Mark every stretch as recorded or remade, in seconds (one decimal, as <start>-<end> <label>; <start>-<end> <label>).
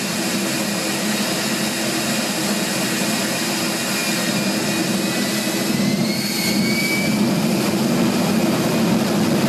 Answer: 0.0-9.5 recorded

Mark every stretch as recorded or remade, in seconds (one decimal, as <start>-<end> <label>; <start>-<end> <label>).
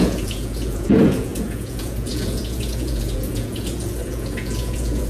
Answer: 0.0-5.1 remade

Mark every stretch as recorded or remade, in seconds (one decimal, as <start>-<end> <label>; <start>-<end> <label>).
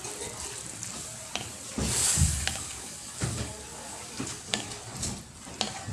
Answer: 0.0-2.0 recorded; 2.0-4.7 remade; 4.7-5.9 recorded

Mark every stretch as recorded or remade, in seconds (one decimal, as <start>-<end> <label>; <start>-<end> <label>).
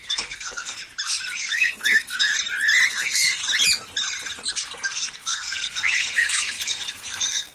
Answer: 0.0-0.8 remade; 0.8-1.4 recorded; 1.4-2.3 remade; 2.3-2.9 recorded; 2.9-3.4 remade; 3.4-4.5 recorded; 4.5-7.5 remade